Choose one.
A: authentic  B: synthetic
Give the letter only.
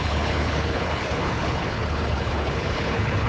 B